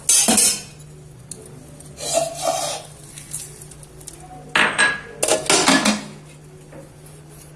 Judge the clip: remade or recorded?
recorded